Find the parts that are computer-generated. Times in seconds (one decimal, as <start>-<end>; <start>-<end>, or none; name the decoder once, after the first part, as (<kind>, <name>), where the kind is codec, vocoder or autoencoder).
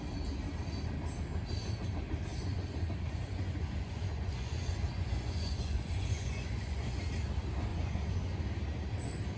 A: 2.3-7.0 (vocoder, Vocos); 7.7-8.4